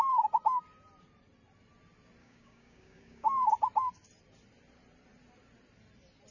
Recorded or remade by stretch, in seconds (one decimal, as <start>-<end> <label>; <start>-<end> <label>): 0.0-2.2 recorded; 2.2-3.5 remade; 3.5-6.3 recorded